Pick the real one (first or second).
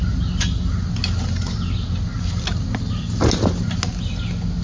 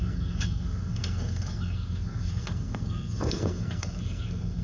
first